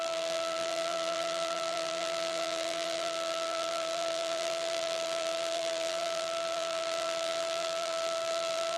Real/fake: fake